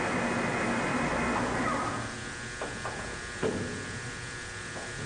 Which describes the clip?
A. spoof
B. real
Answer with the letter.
B